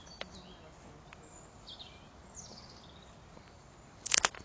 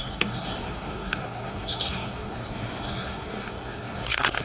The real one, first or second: first